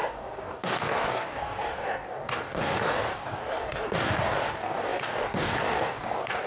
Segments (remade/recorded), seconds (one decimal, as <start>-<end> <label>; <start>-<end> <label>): 0.0-6.5 remade